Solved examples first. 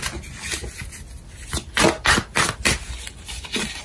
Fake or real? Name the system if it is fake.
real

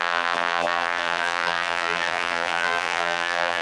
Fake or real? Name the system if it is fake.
fake, vocoder, BigVGAN v2